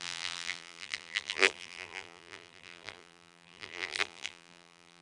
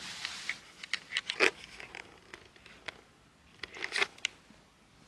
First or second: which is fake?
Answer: first